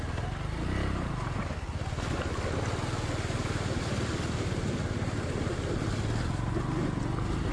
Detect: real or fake real